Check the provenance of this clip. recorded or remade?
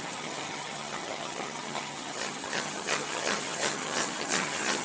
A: remade